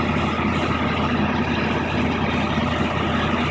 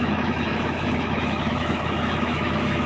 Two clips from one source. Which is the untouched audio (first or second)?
first